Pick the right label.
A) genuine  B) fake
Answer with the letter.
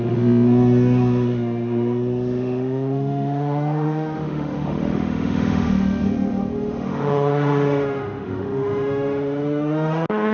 B